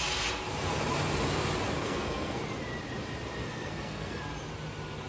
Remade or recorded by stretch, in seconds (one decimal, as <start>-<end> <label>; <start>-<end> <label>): 0.0-1.8 recorded; 1.8-2.4 remade; 2.4-3.4 recorded; 3.4-4.2 remade; 4.2-5.1 recorded